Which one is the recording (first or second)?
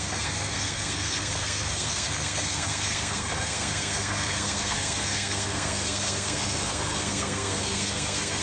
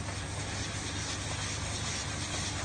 second